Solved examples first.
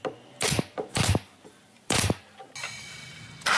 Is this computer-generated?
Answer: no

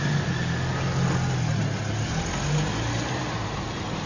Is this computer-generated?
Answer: no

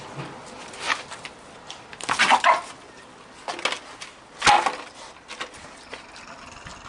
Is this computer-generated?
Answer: no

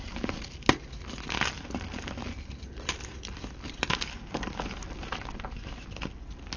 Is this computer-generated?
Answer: no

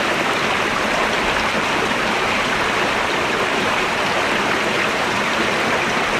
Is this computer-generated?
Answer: no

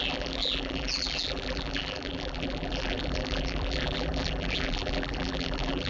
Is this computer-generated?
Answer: yes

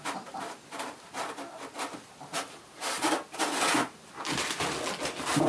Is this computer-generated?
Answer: no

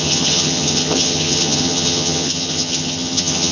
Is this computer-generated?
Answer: yes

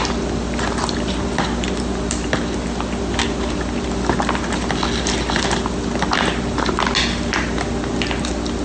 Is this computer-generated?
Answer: no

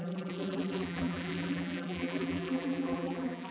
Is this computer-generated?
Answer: yes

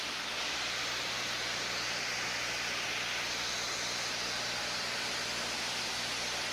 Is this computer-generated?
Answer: no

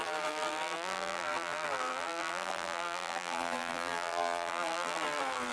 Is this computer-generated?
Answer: yes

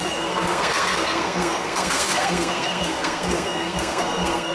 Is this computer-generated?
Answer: yes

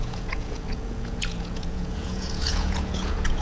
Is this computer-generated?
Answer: yes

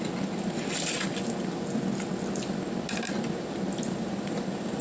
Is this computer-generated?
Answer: no